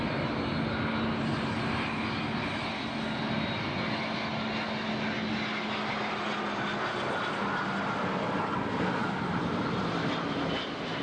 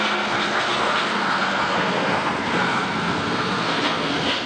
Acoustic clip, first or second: first